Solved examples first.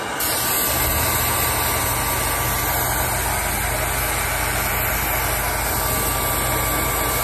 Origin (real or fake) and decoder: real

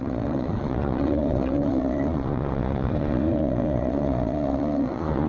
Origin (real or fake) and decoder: fake, vocoder, Vocos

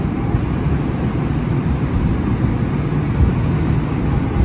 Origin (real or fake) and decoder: real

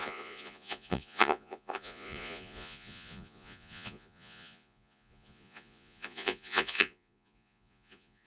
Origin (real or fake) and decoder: fake, vocoder, Vocos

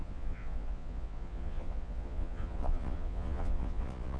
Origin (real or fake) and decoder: fake, vocoder, Vocos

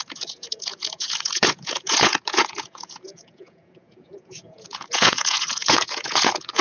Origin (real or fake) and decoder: fake, vocoder, Vocos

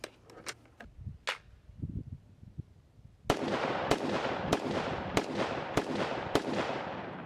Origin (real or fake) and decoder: real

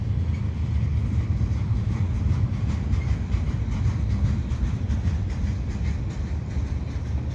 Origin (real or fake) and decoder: real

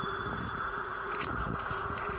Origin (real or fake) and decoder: fake, vocoder, Vocos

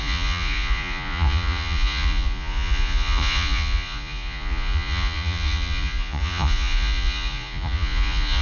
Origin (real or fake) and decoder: fake, vocoder, Vocos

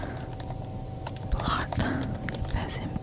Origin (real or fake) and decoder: real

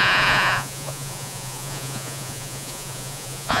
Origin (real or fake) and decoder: fake, vocoder, Vocos